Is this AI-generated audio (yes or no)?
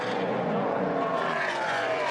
yes